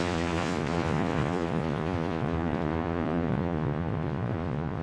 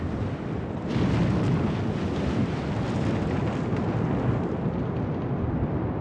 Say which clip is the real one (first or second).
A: second